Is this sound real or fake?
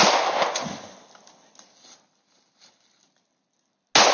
real